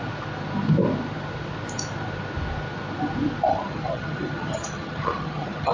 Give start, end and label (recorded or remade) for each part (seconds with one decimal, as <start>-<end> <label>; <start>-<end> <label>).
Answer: 0.0-3.5 recorded; 3.5-5.7 remade